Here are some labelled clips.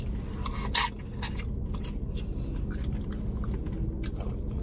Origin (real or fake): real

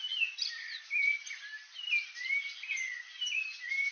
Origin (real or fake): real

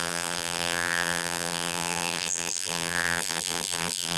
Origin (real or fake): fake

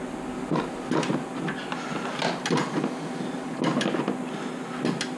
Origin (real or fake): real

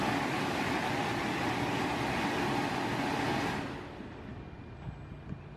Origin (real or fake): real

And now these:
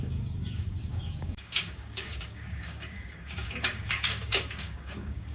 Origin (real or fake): fake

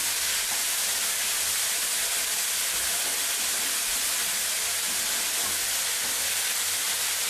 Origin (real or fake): real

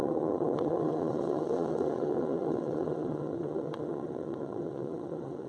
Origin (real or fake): fake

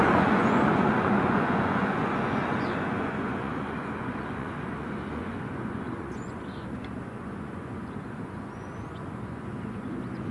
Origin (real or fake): fake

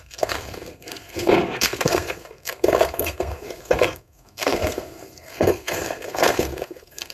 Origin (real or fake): fake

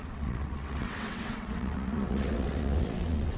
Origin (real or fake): fake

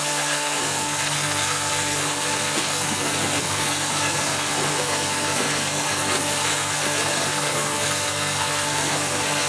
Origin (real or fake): fake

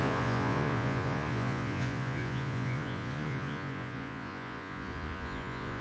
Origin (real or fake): fake